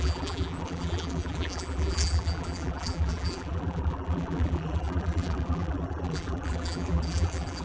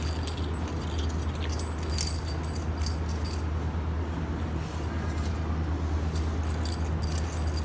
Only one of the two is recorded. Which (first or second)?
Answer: second